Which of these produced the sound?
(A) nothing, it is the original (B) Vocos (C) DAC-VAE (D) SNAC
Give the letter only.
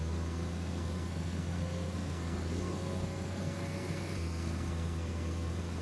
D